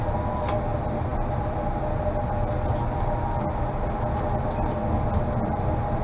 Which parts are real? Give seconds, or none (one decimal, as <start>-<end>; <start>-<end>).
0.0-6.0